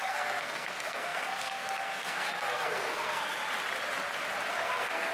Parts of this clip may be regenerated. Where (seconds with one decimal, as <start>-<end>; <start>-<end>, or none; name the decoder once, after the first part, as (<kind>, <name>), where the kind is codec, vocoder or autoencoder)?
0.0-3.4 (codec, SNAC); 4.5-5.1